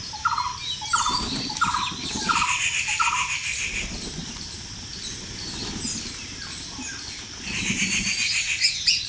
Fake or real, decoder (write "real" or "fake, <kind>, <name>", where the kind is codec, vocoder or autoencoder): real